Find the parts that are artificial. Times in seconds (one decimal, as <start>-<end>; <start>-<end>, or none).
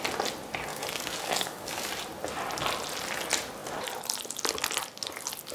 0.7-1.9